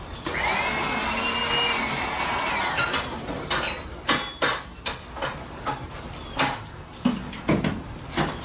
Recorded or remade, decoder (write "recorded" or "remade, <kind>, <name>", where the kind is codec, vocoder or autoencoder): recorded